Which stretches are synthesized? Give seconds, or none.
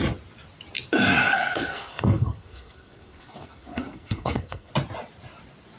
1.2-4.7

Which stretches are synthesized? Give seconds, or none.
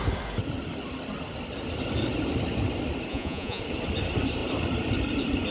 3.1-3.6